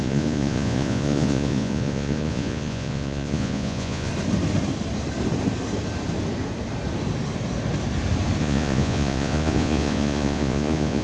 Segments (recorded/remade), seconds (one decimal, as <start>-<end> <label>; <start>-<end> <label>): 0.0-4.1 remade; 4.1-8.4 recorded; 8.4-11.0 remade